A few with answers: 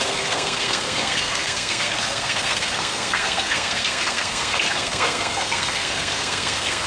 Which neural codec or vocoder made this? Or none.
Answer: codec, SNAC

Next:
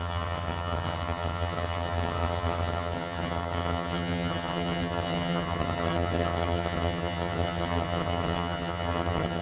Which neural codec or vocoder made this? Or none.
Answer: vocoder, HiFi-GAN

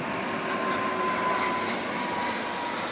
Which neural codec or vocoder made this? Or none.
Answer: none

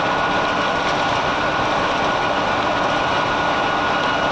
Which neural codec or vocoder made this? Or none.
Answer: none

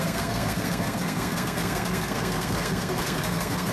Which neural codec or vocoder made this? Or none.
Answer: codec, SNAC